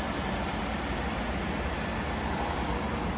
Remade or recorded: recorded